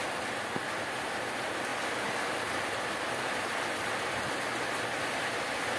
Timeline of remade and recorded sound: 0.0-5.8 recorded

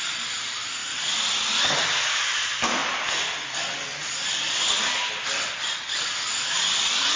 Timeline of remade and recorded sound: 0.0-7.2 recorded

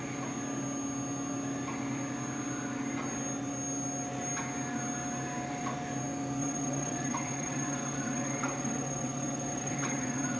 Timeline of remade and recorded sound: 0.0-6.4 recorded; 6.4-10.4 remade

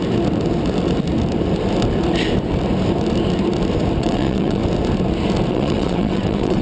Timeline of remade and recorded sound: 0.0-4.0 recorded; 4.0-4.6 remade; 4.6-5.5 recorded; 5.5-6.6 remade

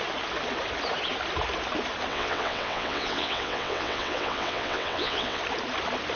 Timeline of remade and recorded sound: 0.0-2.1 recorded; 2.1-5.4 remade; 5.4-6.2 recorded

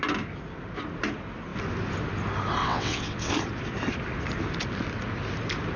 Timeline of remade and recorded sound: 0.0-2.6 recorded; 2.6-3.3 remade; 3.3-5.8 recorded